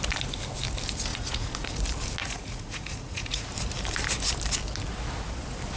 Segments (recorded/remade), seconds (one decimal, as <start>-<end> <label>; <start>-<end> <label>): 0.0-1.1 recorded; 1.1-1.8 remade; 1.8-2.2 recorded; 2.2-3.5 remade; 3.5-5.8 recorded